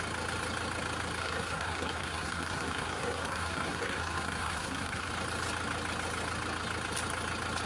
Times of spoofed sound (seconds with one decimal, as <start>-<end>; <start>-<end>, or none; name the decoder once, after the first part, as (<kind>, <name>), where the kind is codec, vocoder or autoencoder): 1.2-5.1 (codec, SNAC)